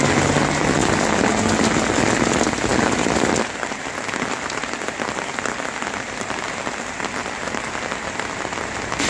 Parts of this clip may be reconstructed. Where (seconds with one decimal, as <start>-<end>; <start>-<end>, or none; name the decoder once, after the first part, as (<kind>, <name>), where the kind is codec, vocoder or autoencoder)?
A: none